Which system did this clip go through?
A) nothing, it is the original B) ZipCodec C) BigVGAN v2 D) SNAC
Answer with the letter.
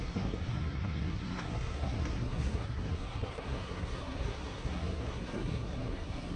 D